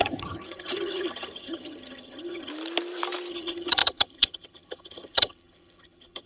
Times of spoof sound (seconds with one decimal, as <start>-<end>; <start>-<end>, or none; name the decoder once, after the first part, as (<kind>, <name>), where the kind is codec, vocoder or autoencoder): 0.0-2.5 (vocoder, HiFi-GAN); 3.3-6.3